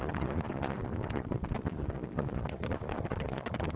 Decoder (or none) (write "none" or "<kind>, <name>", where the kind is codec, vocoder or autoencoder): vocoder, Vocos